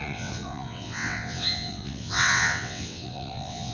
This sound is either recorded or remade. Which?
remade